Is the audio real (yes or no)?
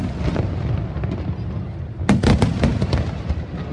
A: yes